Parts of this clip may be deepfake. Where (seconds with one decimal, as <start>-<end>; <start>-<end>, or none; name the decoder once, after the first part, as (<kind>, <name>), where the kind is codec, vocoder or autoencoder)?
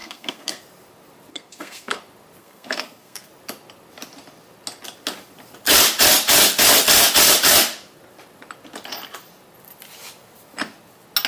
0.0-0.6 (codec, SNAC); 1.3-2.0; 2.4-3.3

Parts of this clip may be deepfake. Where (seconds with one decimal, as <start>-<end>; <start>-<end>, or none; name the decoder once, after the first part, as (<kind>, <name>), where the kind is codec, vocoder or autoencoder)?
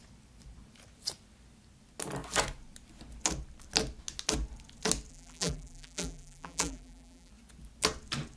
5.1-7.3 (vocoder, BigVGAN v2)